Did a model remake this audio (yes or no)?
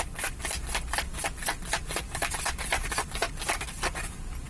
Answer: no